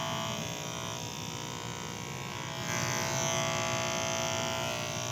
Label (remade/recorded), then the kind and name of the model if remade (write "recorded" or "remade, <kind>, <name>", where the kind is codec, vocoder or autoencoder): recorded